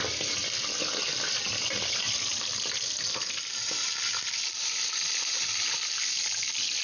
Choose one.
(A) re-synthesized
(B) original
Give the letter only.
B